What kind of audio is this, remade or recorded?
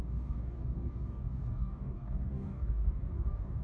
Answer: remade